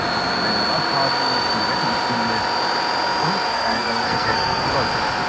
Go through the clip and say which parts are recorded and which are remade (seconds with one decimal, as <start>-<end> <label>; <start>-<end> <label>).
0.0-3.5 recorded; 3.5-4.7 remade; 4.7-5.3 recorded